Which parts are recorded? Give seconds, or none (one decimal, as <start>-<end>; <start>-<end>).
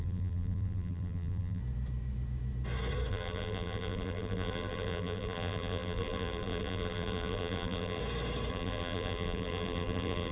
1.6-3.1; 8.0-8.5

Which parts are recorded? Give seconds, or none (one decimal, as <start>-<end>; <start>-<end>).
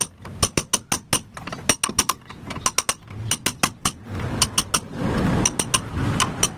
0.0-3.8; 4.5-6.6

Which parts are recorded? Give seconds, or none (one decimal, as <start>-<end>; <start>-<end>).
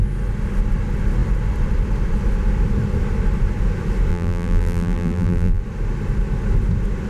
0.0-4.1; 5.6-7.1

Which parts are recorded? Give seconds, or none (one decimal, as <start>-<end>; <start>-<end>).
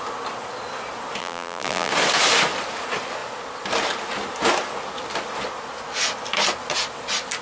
0.0-1.2; 1.9-7.4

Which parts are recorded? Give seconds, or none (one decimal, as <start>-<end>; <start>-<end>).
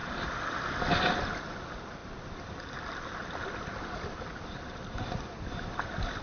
0.0-2.0; 5.7-6.2